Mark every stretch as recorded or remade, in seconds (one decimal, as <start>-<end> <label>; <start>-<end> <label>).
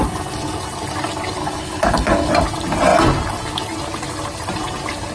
0.0-1.4 recorded; 1.4-2.3 remade; 2.3-5.1 recorded